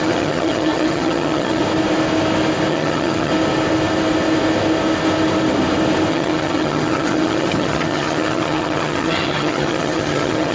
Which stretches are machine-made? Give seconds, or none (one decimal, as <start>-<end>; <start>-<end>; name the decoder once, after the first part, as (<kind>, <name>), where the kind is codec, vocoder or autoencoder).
0.0-1.6 (vocoder, HiFi-GAN); 2.7-3.3; 6.1-10.5